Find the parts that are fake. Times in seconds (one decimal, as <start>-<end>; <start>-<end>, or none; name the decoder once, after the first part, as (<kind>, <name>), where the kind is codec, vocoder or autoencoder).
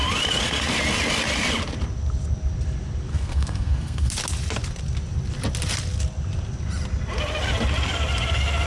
3.1-4.1 (codec, SNAC)